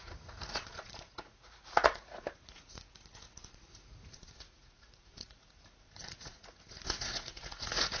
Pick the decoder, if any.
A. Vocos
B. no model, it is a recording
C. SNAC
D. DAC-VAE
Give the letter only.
A